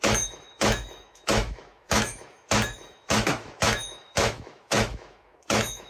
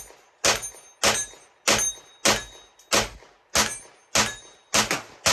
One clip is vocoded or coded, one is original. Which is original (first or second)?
second